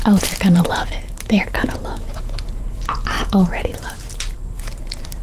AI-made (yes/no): yes